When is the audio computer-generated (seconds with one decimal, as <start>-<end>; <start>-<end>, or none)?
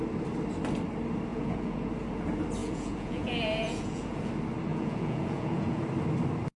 1.3-1.9; 2.6-4.3; 4.7-5.8